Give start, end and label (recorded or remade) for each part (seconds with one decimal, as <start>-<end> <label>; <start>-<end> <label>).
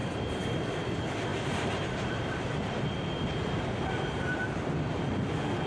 0.0-0.6 remade; 0.6-1.3 recorded; 1.3-4.7 remade; 4.7-5.7 recorded